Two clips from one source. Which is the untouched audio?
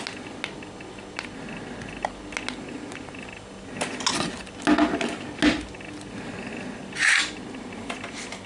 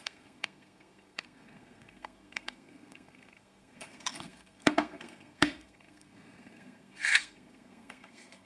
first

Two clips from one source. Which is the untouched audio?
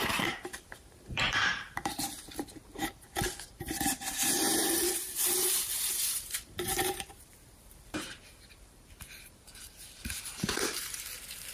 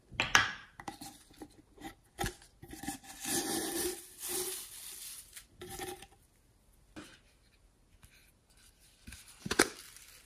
second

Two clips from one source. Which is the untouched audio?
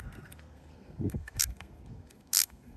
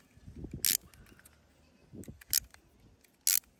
second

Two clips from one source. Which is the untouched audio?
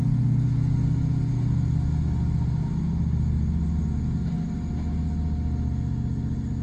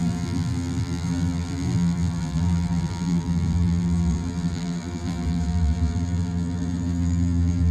first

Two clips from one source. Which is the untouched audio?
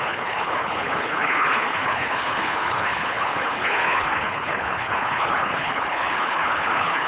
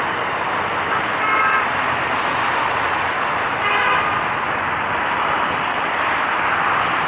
second